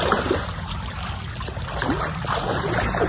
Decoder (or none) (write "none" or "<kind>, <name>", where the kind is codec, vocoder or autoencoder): none